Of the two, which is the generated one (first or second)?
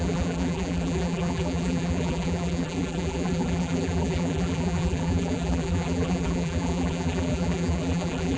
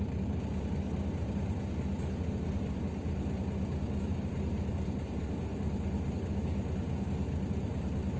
first